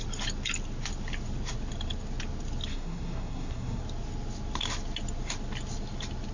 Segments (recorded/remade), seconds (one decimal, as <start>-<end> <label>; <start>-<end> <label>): 0.0-2.7 recorded; 2.7-3.8 remade; 3.8-6.3 recorded